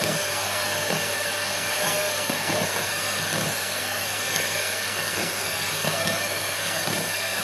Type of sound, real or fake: fake